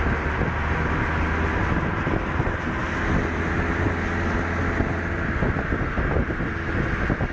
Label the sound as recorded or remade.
recorded